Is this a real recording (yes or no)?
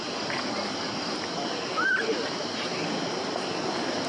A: yes